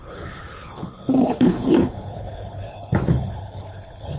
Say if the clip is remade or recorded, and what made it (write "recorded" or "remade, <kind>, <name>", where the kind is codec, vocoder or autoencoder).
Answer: remade, codec, HILCodec